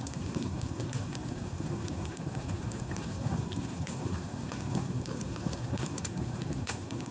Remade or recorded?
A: remade